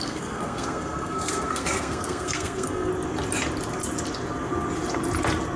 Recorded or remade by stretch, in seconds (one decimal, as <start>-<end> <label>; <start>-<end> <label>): 0.0-2.9 remade; 2.9-5.6 recorded